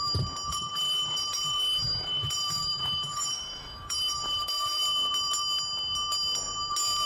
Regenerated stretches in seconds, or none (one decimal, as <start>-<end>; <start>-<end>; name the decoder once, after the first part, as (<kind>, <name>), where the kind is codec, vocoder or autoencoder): 0.5-4.8 (autoencoder, DAC-VAE)